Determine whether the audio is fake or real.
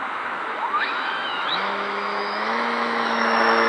fake